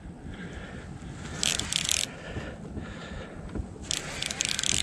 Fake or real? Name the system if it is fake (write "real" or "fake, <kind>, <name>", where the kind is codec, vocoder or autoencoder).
real